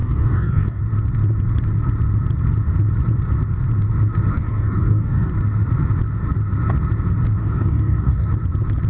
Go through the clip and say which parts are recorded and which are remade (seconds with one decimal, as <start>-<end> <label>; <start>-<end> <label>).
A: 0.0-0.8 remade; 0.8-4.3 recorded; 4.3-5.3 remade; 5.3-7.4 recorded; 7.4-8.3 remade; 8.3-8.9 recorded